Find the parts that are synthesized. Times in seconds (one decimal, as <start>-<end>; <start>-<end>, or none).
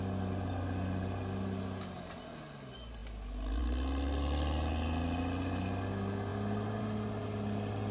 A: none